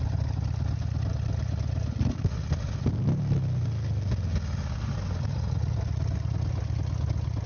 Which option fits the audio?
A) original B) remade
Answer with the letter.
A